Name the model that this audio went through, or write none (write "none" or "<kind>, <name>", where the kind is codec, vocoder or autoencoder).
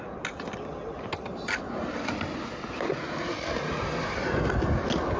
none